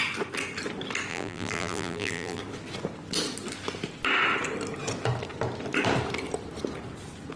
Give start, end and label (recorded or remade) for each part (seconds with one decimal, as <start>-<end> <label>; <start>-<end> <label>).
0.0-1.1 recorded; 1.1-2.4 remade; 2.4-7.4 recorded